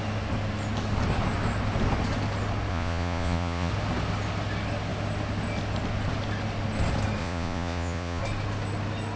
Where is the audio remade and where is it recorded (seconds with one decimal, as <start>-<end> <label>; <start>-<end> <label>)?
0.0-2.7 recorded; 2.7-3.7 remade; 3.7-7.2 recorded; 7.2-8.2 remade; 8.2-9.2 recorded